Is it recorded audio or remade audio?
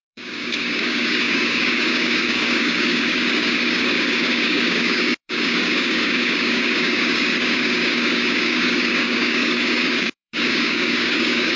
remade